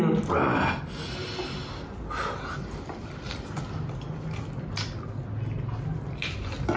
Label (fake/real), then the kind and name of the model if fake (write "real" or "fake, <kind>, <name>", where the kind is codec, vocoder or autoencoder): real